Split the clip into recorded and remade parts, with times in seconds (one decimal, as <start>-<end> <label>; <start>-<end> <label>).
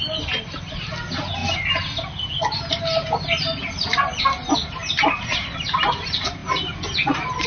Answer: 0.0-7.5 recorded